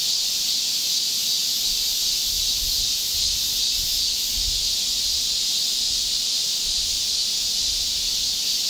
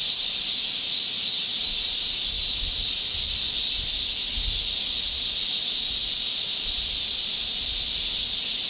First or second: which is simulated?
second